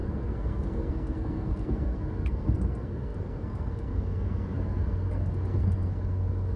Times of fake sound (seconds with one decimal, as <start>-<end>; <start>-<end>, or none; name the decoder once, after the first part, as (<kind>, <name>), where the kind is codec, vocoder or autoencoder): 0.0-6.6 (codec, SNAC)